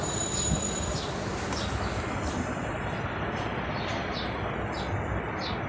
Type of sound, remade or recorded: recorded